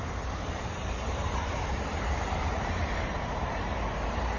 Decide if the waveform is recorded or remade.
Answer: remade